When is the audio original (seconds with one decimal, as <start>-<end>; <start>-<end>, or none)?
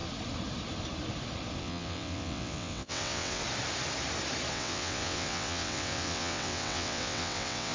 0.0-1.6; 3.4-4.5